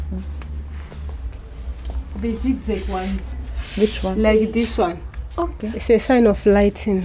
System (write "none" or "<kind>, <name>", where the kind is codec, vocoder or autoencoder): none